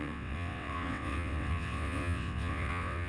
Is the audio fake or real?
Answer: fake